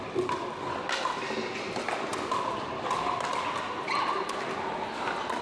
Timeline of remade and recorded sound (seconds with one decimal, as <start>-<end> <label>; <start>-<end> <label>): 0.0-5.4 recorded